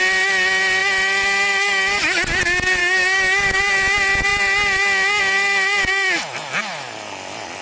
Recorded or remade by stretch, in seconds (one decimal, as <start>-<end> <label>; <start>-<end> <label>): 0.0-2.8 recorded; 2.8-3.6 remade; 3.6-7.6 recorded